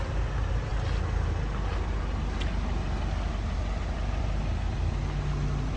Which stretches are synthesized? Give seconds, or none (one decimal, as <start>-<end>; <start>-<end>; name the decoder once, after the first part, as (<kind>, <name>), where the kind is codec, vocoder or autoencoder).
none